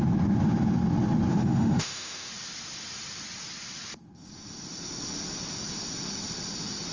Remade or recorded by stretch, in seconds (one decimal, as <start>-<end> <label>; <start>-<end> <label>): 0.0-1.3 recorded; 1.3-2.3 remade; 2.3-6.9 recorded